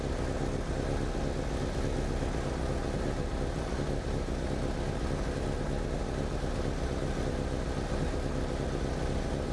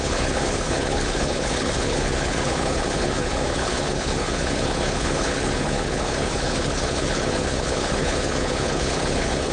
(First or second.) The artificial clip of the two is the second